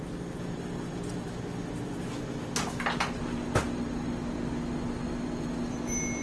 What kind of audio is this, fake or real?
real